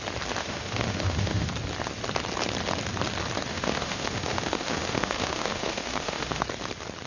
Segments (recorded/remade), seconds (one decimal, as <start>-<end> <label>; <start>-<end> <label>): 0.0-0.4 recorded; 0.4-1.5 remade; 1.5-3.5 recorded; 3.5-6.4 remade; 6.4-7.1 recorded